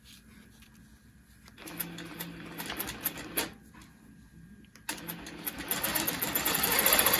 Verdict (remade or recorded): recorded